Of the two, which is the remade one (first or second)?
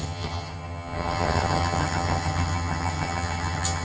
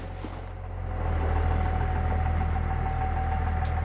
first